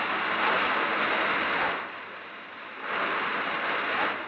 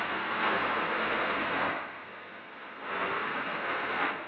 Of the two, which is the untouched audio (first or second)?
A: first